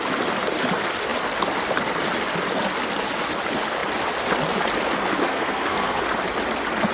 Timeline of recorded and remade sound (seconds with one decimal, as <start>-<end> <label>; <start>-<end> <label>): 0.0-5.2 recorded; 5.2-6.0 remade; 6.0-6.9 recorded